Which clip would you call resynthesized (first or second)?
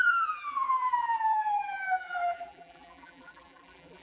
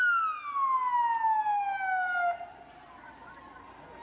first